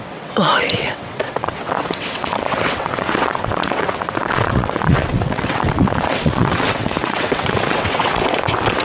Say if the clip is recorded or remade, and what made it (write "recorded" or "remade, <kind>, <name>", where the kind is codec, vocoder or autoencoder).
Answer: remade, vocoder, WaveNeXt